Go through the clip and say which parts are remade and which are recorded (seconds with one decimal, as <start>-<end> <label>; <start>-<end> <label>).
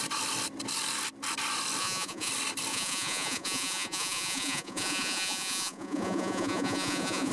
0.0-1.8 recorded; 1.8-2.3 remade; 2.3-2.7 recorded; 2.7-7.3 remade